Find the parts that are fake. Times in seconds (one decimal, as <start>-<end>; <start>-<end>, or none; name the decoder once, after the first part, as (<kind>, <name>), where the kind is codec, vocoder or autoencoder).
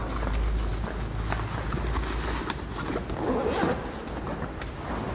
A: none